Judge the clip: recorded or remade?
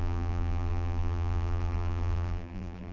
remade